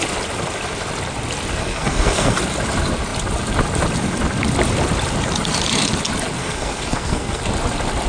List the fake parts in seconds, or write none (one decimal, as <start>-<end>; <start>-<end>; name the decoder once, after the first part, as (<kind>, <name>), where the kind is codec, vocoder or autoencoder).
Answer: 1.6-2.4 (codec, SNAC); 6.4-7.4